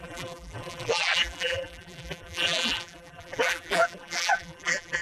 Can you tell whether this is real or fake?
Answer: fake